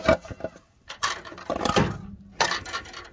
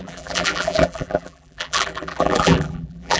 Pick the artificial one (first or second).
second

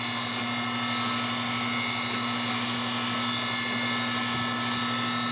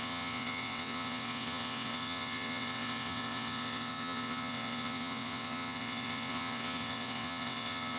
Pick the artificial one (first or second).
second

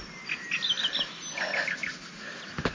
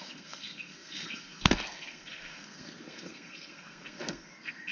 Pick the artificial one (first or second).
second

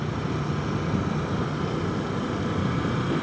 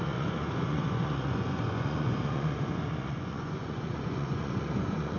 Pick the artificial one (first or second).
second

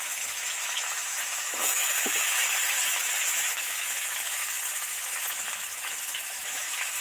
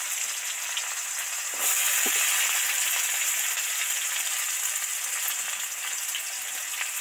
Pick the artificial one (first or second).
first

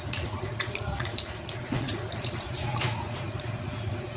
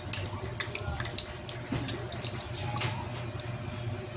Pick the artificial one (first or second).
first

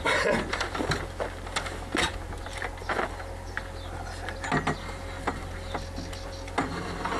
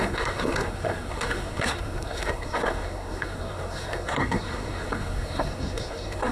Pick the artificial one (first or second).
second